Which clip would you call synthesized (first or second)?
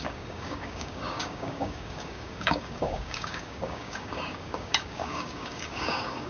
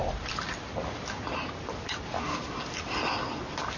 first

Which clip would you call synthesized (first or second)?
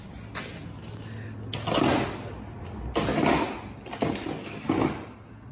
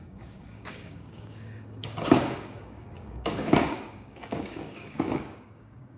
second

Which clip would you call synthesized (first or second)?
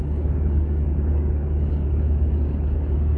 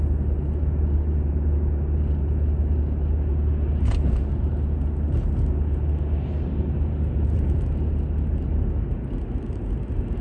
first